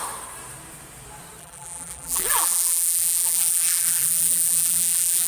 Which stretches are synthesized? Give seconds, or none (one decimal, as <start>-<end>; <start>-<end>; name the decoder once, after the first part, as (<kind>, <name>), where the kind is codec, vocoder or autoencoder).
1.4-5.3 (vocoder, BigVGAN v2)